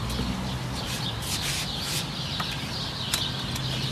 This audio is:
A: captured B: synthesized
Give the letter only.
A